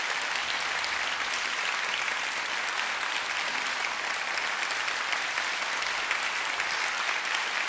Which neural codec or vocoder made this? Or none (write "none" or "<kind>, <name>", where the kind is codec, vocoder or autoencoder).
none